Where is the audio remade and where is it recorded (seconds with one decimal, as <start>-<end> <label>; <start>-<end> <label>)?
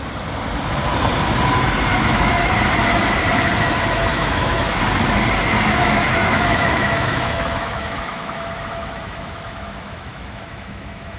0.0-1.9 recorded; 1.9-2.5 remade; 2.5-4.1 recorded; 4.1-4.8 remade; 4.8-5.8 recorded; 5.8-11.2 remade